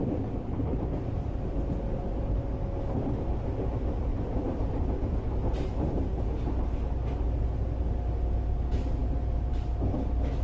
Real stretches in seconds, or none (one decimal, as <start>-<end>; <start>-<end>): 0.0-4.1; 5.1-10.4